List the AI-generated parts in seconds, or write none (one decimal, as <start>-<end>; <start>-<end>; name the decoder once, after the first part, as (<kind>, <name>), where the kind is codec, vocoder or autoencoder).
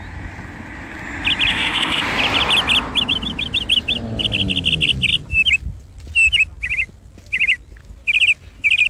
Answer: 1.5-2.0 (autoencoder, DAC-VAE)